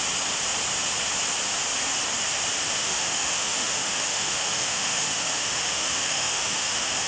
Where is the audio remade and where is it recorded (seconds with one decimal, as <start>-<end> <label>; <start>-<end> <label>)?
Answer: 0.0-2.8 recorded; 2.8-7.1 remade

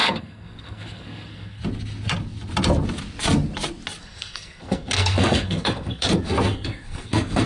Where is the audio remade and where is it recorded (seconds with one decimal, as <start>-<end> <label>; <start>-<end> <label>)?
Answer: 0.0-1.6 remade; 1.6-4.0 recorded; 4.0-7.5 remade

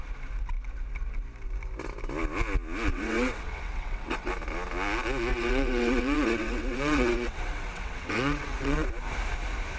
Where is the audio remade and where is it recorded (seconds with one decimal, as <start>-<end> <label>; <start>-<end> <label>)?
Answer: 0.0-2.9 recorded; 2.9-4.3 remade; 4.3-5.3 recorded; 5.3-8.9 remade; 8.9-9.8 recorded

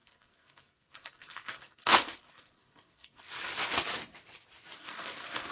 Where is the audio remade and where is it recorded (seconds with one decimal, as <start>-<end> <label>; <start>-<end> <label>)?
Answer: 0.0-3.3 remade; 3.3-4.8 recorded; 4.8-5.5 remade

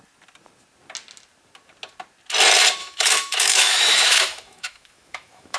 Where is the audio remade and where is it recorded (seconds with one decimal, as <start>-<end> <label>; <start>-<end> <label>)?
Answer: 0.0-2.8 recorded; 2.8-5.6 remade

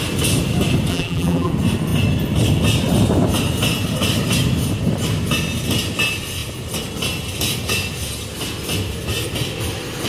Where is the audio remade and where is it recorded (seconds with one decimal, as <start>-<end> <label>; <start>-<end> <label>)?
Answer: 0.0-0.9 recorded; 0.9-1.5 remade; 1.5-10.1 recorded

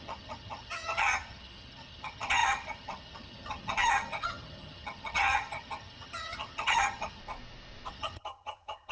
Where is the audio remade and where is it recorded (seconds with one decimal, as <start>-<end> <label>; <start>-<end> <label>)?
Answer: 0.0-7.2 remade; 7.2-7.9 recorded; 7.9-8.9 remade

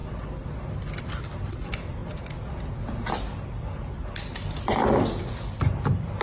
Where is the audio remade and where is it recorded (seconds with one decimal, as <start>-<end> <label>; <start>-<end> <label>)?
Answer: 0.0-6.2 recorded